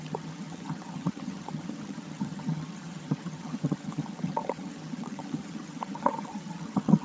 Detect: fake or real fake